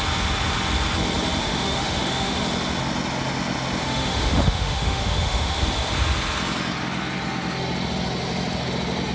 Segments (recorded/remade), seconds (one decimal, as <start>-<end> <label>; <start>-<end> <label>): 0.0-1.4 recorded; 1.4-2.4 remade; 2.4-3.8 recorded; 3.8-5.6 remade; 5.6-9.1 recorded